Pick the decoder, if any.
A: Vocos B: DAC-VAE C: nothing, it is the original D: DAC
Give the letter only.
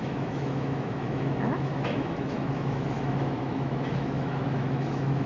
B